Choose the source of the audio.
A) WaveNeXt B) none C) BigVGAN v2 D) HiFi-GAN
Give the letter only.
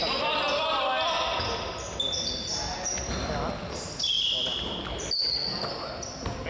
B